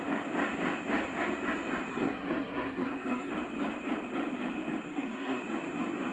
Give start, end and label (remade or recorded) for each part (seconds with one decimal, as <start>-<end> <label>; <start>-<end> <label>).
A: 0.0-1.9 recorded; 1.9-3.3 remade; 3.3-4.9 recorded; 4.9-5.4 remade; 5.4-6.1 recorded